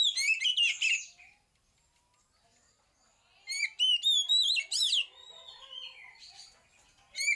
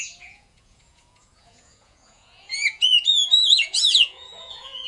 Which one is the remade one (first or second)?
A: second